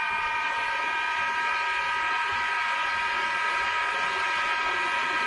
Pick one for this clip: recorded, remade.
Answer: remade